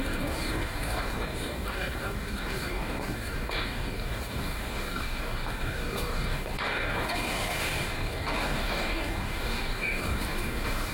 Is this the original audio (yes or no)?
no